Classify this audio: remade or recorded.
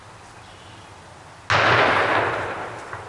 recorded